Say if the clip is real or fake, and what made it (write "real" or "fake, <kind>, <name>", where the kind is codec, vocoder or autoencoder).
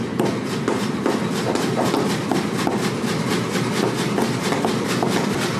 real